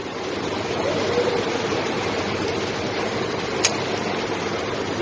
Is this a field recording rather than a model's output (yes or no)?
yes